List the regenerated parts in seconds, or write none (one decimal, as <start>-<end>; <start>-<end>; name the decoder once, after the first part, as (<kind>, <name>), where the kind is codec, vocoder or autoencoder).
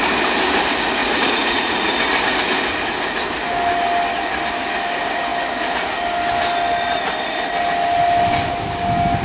1.0-1.9 (vocoder, Vocos)